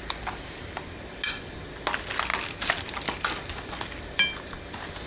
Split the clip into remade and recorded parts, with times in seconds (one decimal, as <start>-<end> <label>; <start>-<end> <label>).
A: 0.0-5.1 recorded